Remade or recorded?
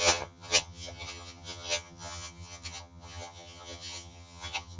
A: remade